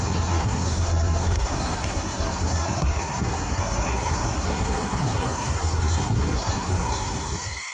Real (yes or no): no